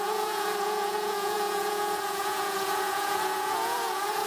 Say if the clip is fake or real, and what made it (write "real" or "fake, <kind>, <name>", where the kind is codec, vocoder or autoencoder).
fake, vocoder, Vocos